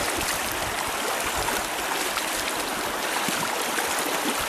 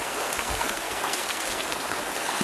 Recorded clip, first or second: first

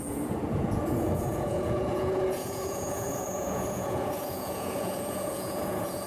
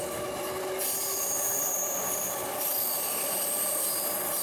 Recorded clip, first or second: second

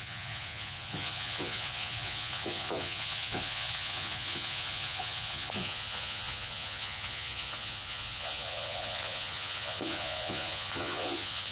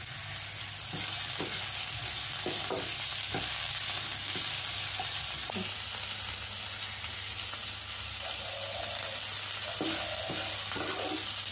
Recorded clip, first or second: second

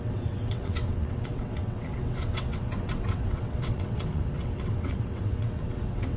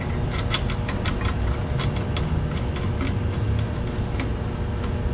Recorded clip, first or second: second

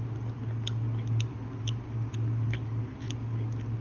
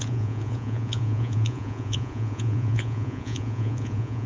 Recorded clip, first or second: first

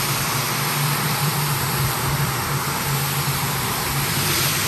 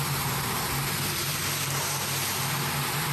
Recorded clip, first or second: second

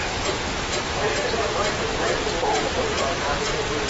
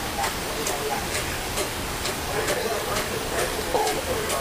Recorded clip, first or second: first